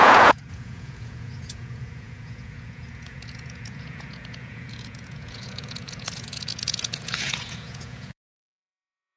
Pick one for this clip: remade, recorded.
remade